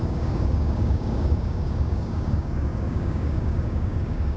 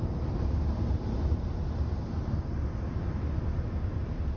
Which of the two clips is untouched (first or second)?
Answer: second